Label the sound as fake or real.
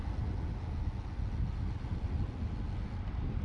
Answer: real